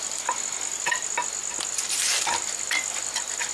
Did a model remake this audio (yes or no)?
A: no